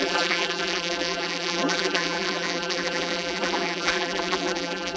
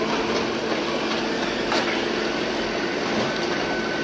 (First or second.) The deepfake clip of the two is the first